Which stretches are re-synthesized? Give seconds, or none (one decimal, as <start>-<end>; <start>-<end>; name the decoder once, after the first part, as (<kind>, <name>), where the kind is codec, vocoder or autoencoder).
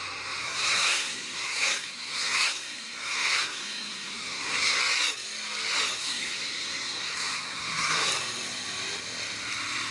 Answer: 0.4-4.8 (codec, SNAC); 6.0-8.1